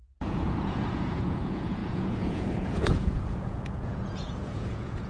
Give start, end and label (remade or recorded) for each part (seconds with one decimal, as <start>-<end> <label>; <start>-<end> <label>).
0.0-5.1 remade